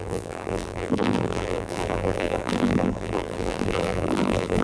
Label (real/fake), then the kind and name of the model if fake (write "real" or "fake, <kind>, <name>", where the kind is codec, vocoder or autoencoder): fake, vocoder, BigVGAN v2